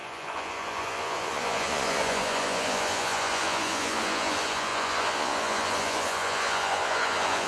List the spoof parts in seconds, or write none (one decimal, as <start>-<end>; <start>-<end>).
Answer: 0.0-7.5